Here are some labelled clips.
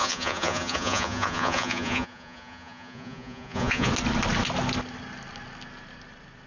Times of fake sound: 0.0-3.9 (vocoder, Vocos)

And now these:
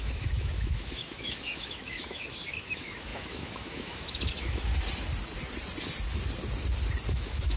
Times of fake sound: 0.0-4.7 (autoencoder, DAC-VAE); 7.1-7.6

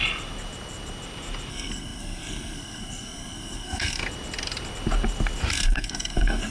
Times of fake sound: 1.5-4.0 (codec, SNAC); 5.5-6.5

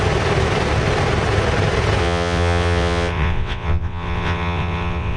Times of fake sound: 2.0-5.2 (vocoder, WaveNeXt)

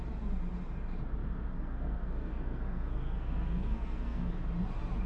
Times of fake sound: 1.2-4.3 (codec, SNAC)

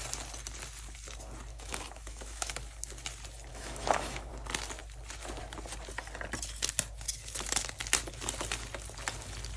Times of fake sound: 1.5-2.5 (autoencoder, DAC-VAE); 3.5-4.3

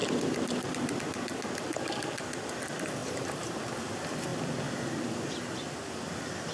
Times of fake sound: 3.0-3.6 (vocoder, BigVGAN v2)